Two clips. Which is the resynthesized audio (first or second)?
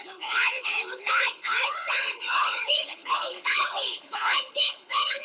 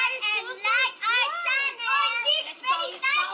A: first